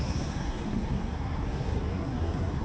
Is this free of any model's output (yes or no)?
no